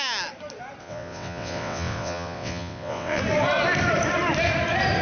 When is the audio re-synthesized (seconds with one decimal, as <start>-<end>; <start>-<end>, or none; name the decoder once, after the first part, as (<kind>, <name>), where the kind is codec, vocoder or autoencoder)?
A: 0.8-3.2 (vocoder, WaveNeXt)